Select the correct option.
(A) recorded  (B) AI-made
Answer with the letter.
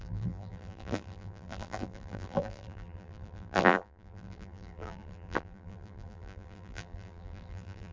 B